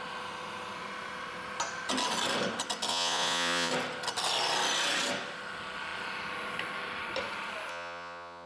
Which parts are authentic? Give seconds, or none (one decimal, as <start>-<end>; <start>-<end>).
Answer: 0.0-2.9; 3.7-7.7

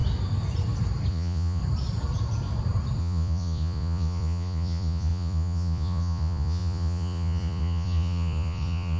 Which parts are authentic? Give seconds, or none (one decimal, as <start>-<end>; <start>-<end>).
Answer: 0.0-1.1; 1.6-3.0